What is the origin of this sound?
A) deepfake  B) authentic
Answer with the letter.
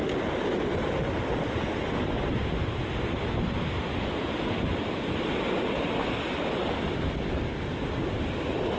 B